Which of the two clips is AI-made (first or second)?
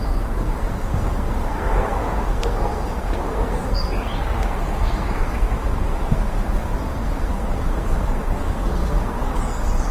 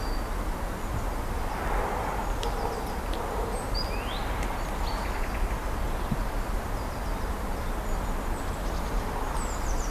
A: first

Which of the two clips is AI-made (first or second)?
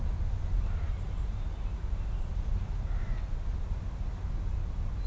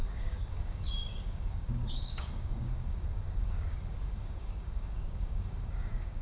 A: second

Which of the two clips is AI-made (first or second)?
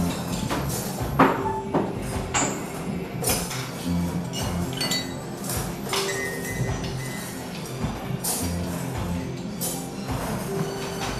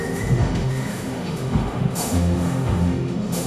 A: second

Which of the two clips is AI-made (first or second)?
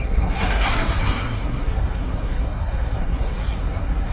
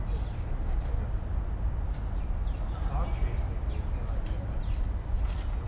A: first